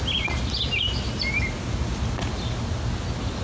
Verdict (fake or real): real